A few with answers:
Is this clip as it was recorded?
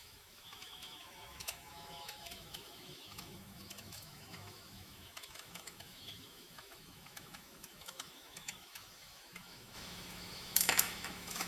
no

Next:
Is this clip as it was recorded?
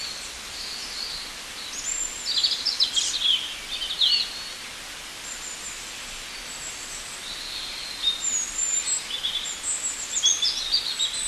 yes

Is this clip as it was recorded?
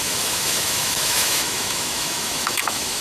no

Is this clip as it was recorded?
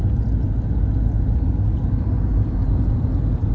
yes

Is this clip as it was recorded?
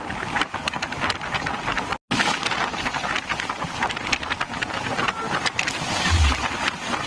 yes